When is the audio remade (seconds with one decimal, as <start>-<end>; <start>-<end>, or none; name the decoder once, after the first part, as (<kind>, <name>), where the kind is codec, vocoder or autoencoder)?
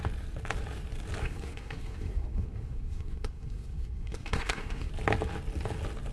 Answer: 1.2-4.9 (codec, SNAC)